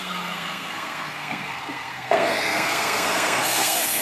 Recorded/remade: remade